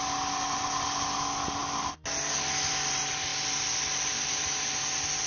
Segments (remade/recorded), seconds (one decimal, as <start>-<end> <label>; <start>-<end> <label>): 0.0-5.3 recorded